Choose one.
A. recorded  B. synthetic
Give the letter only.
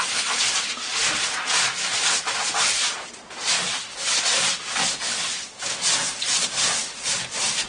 A